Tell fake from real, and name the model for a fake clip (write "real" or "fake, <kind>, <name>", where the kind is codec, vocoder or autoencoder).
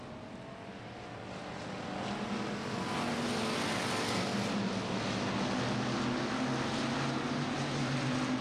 real